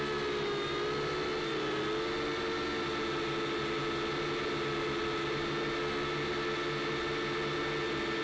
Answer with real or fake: real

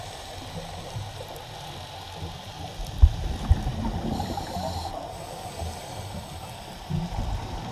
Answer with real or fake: real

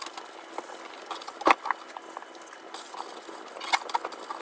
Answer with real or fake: real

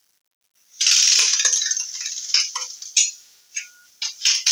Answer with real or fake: real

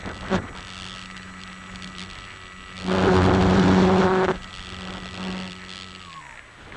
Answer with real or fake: real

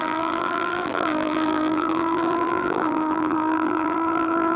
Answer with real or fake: fake